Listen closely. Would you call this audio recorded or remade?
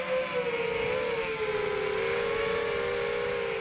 recorded